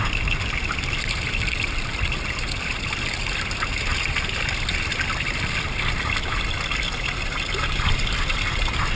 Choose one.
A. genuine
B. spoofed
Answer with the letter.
A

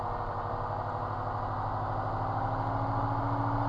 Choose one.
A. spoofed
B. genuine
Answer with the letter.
B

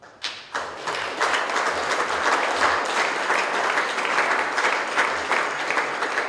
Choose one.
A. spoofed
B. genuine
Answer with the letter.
B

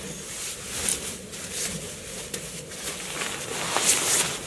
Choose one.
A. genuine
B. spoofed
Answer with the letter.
A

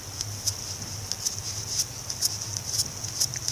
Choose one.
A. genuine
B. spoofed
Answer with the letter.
A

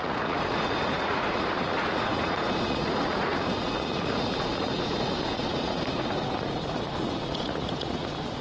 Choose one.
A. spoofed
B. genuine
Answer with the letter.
A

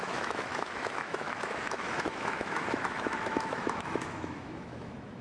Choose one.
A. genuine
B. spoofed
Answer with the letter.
B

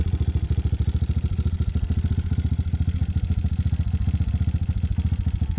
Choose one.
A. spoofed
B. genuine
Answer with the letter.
B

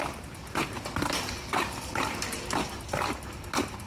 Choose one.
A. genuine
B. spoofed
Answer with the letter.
A